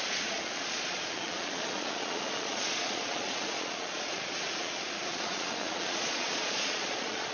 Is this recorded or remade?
remade